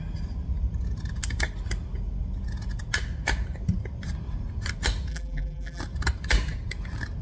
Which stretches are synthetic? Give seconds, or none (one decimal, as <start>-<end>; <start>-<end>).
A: 5.1-5.8